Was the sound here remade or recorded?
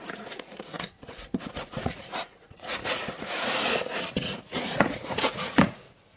remade